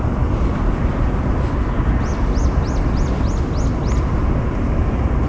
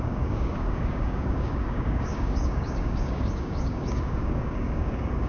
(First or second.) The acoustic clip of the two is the first